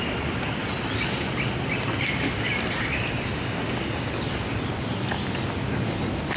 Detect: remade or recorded recorded